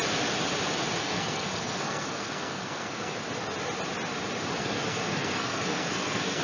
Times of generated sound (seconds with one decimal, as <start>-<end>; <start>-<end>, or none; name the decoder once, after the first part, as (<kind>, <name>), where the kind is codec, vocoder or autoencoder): 1.0-3.2 (codec, SNAC); 4.6-6.4